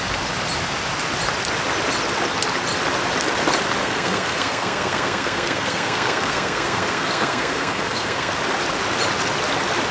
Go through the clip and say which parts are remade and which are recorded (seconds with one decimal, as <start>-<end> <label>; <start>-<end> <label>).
0.0-3.8 recorded; 3.8-8.3 remade; 8.3-9.9 recorded

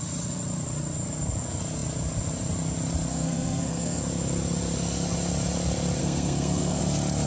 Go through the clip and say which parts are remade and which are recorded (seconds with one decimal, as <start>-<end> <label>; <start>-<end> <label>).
0.0-3.1 recorded; 3.1-4.0 remade; 4.0-6.0 recorded; 6.0-6.8 remade; 6.8-7.3 recorded

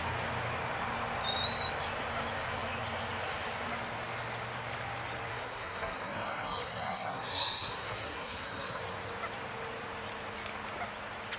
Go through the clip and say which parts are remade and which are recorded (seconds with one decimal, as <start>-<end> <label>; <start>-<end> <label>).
0.0-5.3 recorded; 5.3-8.8 remade; 8.8-11.4 recorded

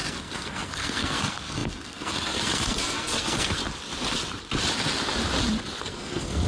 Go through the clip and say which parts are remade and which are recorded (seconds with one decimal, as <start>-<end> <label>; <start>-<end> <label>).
0.0-3.6 remade; 3.6-5.8 recorded; 5.8-6.5 remade

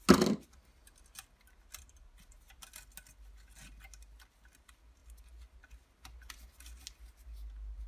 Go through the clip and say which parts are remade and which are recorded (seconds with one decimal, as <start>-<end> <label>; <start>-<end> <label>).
0.0-7.9 recorded